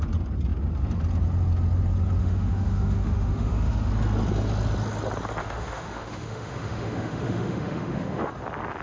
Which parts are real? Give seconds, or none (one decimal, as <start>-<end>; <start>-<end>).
0.0-2.2; 3.9-5.4; 8.3-8.8